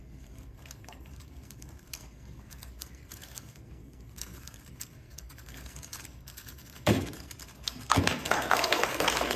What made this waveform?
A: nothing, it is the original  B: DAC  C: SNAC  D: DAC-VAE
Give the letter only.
C